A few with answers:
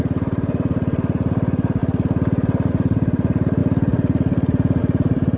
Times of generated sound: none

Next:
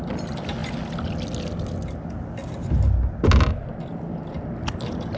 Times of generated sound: none

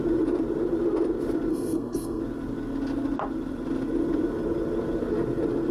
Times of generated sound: 1.5-2.2

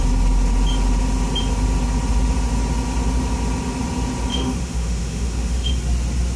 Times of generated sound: 4.3-5.7

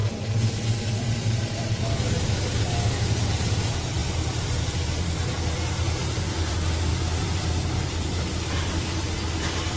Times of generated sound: 0.0-9.8

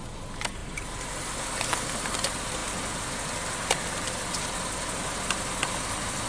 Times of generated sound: none